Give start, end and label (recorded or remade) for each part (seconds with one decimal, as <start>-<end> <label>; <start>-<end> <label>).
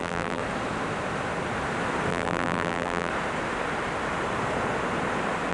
0.0-0.4 remade; 0.4-2.1 recorded; 2.1-3.1 remade; 3.1-5.5 recorded